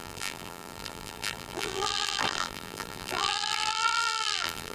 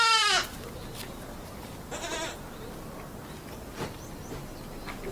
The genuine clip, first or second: second